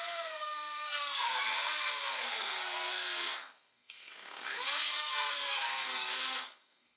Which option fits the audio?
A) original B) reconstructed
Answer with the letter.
B